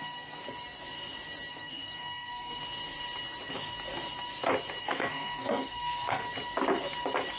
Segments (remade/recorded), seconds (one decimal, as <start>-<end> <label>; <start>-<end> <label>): 0.0-0.4 remade; 0.4-1.5 recorded; 1.5-2.6 remade; 2.6-4.8 recorded; 4.8-6.2 remade; 6.2-7.4 recorded